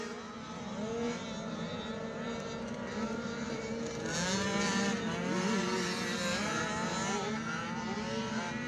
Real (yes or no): yes